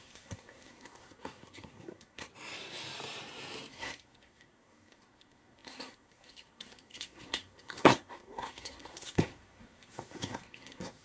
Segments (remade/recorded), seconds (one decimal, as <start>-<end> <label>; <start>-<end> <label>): 0.0-2.3 remade; 2.3-3.7 recorded; 3.7-11.0 remade